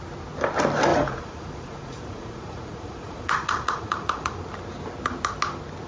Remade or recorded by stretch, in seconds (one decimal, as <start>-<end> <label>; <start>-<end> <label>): 0.0-0.9 recorded; 0.9-4.4 remade; 4.4-5.9 recorded